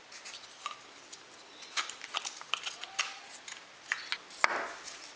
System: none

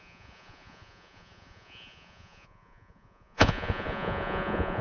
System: vocoder, Vocos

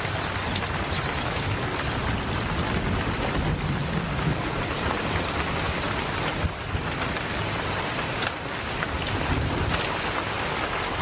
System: none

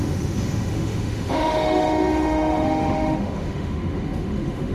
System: autoencoder, DAC-VAE